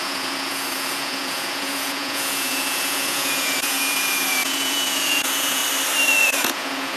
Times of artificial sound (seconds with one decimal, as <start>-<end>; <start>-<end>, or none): 0.0-5.6; 6.1-7.0